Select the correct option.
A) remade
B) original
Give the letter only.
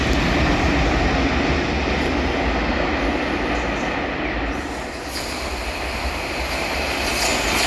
B